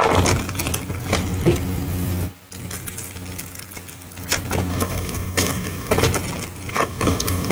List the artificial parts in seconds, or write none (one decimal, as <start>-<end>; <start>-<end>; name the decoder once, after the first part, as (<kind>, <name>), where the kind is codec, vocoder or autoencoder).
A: 4.7-5.9 (codec, DAC); 6.7-7.5